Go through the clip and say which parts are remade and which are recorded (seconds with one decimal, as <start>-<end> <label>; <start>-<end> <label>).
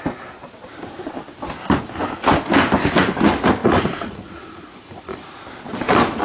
0.0-3.6 recorded; 3.6-5.4 remade; 5.4-6.2 recorded